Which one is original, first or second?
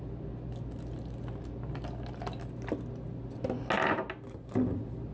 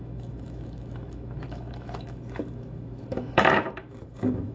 first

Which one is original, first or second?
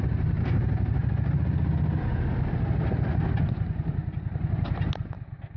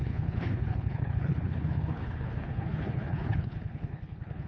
first